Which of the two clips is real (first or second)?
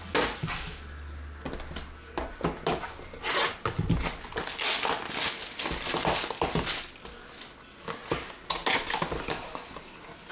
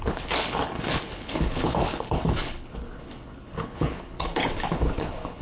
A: first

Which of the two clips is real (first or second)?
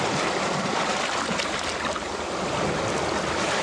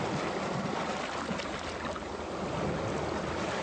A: second